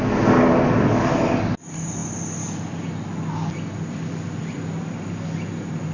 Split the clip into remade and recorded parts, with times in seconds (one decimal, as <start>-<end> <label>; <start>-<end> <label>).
0.0-5.9 recorded